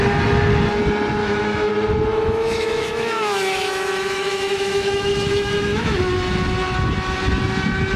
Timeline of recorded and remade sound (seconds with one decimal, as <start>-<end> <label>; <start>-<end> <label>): 0.0-1.2 recorded; 1.2-1.7 remade; 1.7-2.1 recorded; 2.1-6.0 remade; 6.0-8.0 recorded